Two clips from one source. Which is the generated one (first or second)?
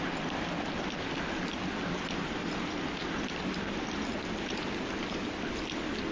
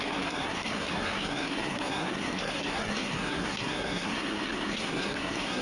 second